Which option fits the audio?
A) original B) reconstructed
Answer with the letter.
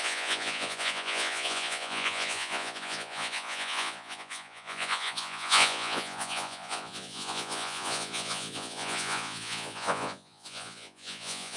B